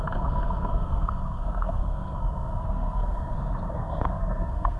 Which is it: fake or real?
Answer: fake